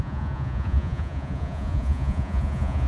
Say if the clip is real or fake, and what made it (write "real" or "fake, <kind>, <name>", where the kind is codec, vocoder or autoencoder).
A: fake, vocoder, Vocos